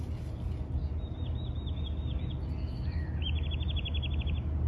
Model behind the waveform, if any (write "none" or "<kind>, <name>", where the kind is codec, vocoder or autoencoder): none